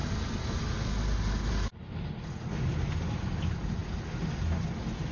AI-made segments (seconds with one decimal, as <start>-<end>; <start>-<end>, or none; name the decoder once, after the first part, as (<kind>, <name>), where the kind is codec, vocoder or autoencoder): none